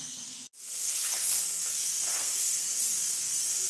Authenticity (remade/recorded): remade